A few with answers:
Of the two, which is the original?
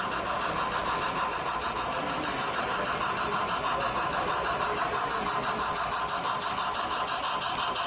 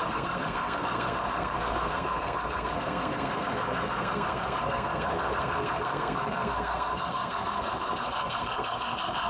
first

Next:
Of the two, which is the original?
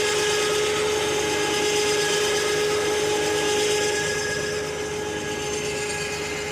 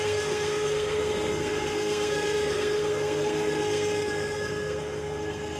first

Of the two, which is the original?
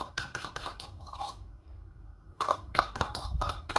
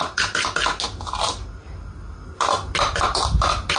second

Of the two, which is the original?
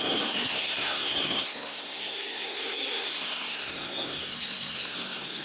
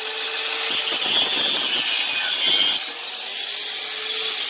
second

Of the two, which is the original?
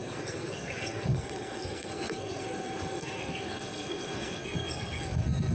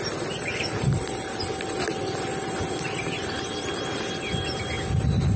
second